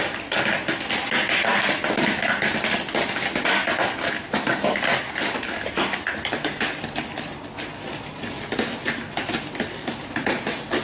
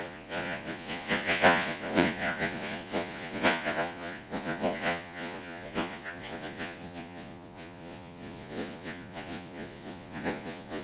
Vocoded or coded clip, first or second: second